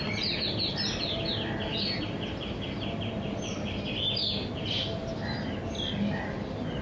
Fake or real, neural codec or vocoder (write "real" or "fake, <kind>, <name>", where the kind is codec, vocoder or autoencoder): real